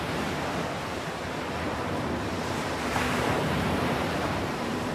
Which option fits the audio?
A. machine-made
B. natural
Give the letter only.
A